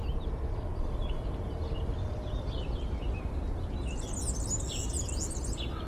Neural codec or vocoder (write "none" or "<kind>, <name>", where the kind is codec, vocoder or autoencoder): none